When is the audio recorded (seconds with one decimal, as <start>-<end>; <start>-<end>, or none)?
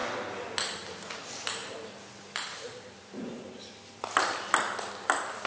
0.0-5.5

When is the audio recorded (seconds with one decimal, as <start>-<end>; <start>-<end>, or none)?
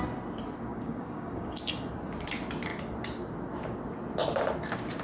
0.0-0.7; 1.5-5.0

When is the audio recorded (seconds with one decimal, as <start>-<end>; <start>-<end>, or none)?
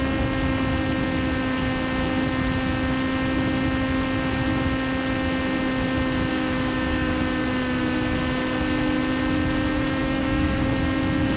0.0-6.3; 7.2-10.0; 10.7-11.4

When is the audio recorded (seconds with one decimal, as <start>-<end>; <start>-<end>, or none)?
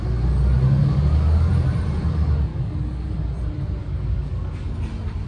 0.0-0.8; 1.5-2.5; 3.1-3.8; 4.8-5.3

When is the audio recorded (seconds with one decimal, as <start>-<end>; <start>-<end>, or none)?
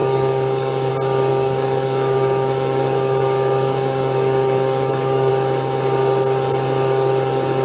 0.9-1.3; 5.3-7.6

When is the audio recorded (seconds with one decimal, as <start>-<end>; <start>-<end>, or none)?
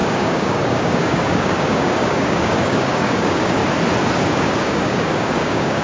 3.6-4.3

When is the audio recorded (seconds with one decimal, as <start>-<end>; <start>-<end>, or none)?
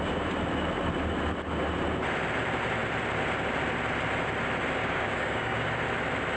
0.0-4.8; 5.7-6.4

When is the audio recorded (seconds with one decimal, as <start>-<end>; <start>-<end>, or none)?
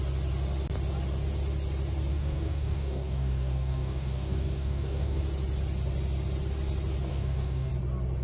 0.0-2.1; 5.2-7.1; 7.7-8.2